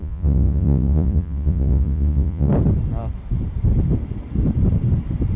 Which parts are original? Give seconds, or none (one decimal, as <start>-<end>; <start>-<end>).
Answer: 2.5-5.4